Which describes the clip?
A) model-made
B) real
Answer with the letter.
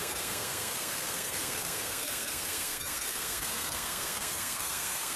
A